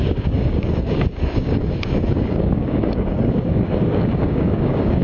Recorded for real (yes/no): no